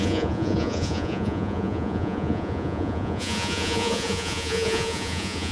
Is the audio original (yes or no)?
no